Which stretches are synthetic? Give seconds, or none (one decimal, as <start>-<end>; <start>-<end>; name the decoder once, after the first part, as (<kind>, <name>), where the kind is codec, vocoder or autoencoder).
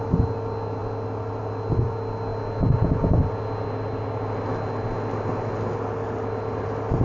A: none